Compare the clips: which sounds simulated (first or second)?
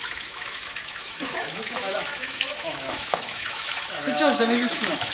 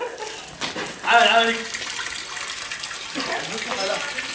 first